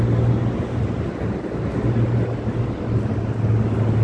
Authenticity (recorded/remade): recorded